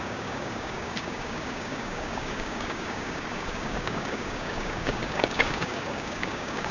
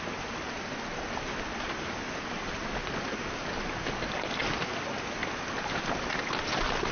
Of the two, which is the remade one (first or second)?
first